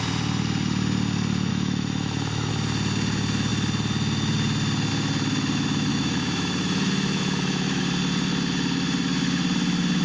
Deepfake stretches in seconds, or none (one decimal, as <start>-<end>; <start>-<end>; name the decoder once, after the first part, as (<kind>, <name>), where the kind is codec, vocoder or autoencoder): 1.5-2.5 (autoencoder, DAC-VAE); 5.9-7.8